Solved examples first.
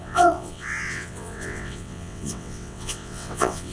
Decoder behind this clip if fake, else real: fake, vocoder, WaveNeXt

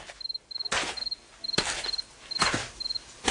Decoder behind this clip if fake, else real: real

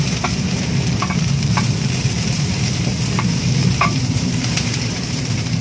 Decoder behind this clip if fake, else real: fake, vocoder, BigVGAN v2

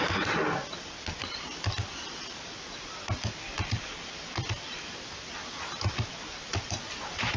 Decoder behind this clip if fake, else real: fake, vocoder, BigVGAN v2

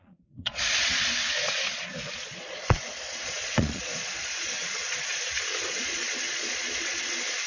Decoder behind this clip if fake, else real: fake, vocoder, Vocos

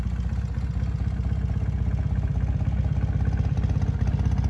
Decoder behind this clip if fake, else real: real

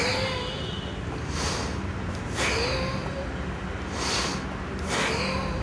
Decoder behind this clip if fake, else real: real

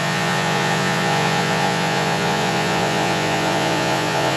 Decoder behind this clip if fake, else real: fake, vocoder, Vocos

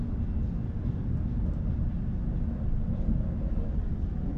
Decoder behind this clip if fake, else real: real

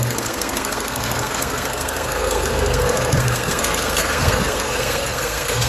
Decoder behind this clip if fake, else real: fake, codec, SNAC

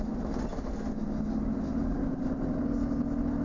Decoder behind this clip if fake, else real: real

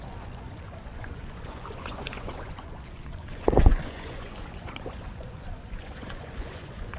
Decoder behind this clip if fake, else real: fake, vocoder, Vocos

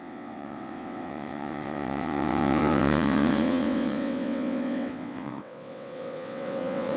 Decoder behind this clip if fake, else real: fake, vocoder, WaveNeXt